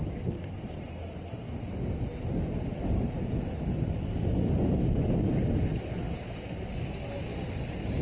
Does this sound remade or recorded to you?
recorded